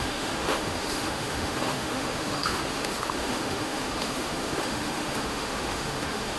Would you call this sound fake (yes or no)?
yes